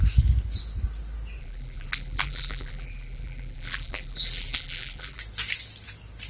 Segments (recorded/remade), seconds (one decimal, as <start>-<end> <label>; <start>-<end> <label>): 0.0-1.4 recorded; 1.4-5.2 remade; 5.2-6.3 recorded